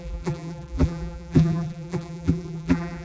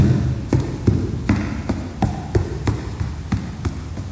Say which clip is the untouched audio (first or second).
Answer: second